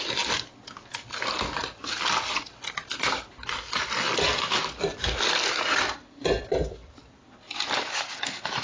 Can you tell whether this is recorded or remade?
recorded